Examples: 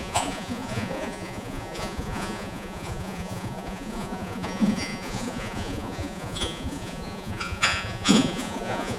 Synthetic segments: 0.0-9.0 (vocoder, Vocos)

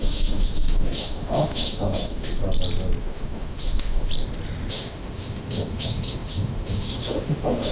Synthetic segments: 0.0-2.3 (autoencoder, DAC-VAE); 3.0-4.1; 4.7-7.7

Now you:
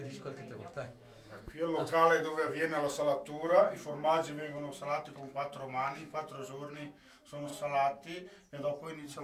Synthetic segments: 0.0-7.5 (autoencoder, DAC-VAE)

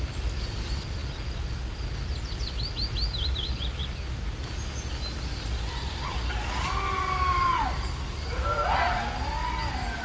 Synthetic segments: none